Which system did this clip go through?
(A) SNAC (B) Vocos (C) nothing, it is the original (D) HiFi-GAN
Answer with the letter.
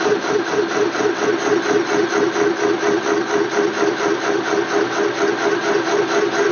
C